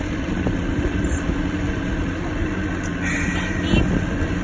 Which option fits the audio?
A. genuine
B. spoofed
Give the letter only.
A